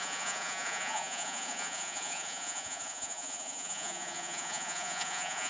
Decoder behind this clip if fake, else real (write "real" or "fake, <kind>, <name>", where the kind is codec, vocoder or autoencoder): fake, vocoder, Vocos